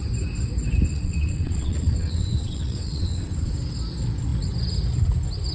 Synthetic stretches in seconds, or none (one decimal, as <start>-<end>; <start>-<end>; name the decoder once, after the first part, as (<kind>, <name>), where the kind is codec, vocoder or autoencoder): 0.9-3.5 (vocoder, WaveNeXt)